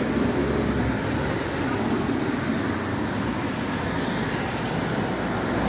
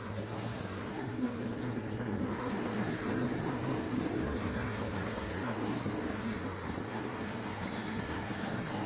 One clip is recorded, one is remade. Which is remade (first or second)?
second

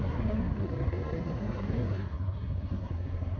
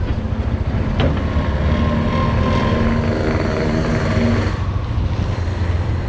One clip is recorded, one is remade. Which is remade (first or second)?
first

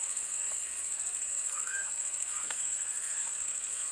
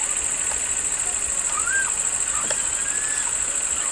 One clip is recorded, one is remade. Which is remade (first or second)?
first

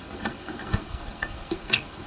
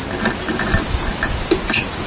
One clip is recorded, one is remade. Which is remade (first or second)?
first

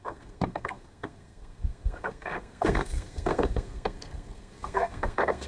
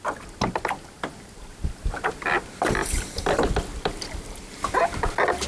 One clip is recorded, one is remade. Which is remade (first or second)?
first